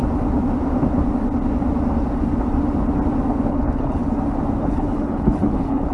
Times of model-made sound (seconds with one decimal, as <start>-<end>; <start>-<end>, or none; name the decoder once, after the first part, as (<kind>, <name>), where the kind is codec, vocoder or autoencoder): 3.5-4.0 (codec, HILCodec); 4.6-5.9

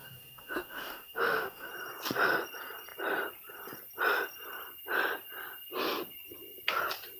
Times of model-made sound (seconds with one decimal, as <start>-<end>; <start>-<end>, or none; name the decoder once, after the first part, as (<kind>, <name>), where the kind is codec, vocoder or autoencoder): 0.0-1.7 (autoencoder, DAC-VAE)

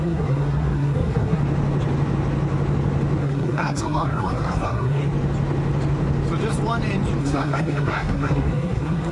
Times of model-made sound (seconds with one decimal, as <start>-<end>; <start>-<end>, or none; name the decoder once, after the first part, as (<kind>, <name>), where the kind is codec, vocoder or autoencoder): 0.0-1.4 (codec, SNAC); 3.2-5.0; 7.2-9.1

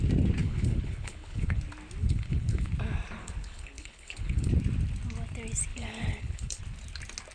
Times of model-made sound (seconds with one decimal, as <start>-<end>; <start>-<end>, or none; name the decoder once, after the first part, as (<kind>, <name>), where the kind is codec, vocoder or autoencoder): 0.4-1.6 (codec, HILCodec); 2.0-2.7; 3.2-4.5; 5.7-6.6

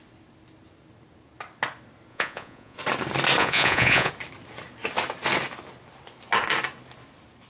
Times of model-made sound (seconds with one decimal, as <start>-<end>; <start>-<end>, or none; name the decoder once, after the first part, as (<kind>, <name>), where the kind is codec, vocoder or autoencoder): 2.1-2.8 (vocoder, Vocos); 3.4-4.1

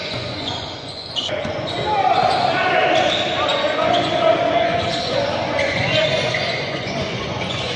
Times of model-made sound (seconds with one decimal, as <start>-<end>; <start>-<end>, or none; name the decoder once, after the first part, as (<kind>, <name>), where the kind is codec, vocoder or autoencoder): 0.0-1.8 (vocoder, Vocos); 3.5-4.1; 4.6-7.8

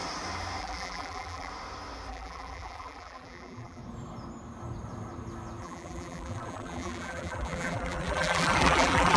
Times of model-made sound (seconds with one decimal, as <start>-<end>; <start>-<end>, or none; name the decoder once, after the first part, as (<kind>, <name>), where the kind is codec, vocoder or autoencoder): 0.6-1.5 (vocoder, BigVGAN v2); 2.1-3.8; 5.6-9.2

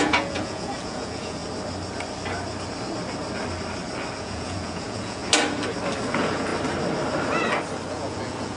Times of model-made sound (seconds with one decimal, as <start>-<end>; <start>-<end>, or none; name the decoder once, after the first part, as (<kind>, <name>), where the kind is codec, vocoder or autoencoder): 0.0-1.4 (vocoder, Vocos); 4.2-5.2; 6.1-6.5; 7.9-8.6